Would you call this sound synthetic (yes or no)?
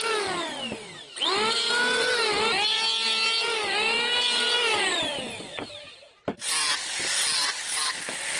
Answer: no